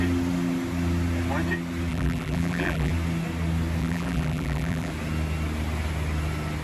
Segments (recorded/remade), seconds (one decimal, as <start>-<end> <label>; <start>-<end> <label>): 0.0-1.9 recorded; 1.9-2.9 remade; 2.9-3.8 recorded; 3.8-4.9 remade; 4.9-6.6 recorded